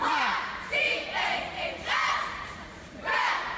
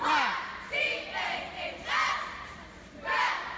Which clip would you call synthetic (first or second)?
first